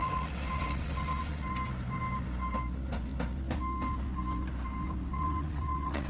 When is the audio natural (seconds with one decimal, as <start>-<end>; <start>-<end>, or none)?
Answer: 1.5-5.1